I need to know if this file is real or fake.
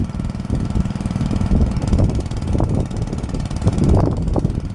fake